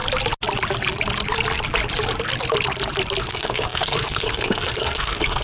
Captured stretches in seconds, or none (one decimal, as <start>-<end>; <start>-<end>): 0.0-3.2